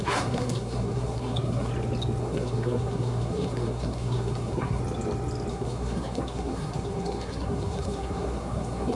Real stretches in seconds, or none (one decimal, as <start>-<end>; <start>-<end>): 1.7-2.2; 4.8-5.5